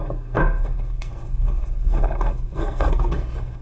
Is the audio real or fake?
fake